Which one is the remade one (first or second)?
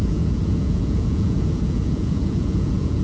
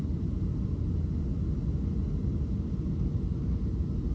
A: first